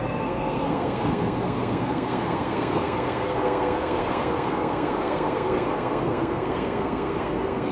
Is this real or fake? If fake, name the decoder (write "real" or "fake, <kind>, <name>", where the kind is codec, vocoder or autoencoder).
fake, codec, SNAC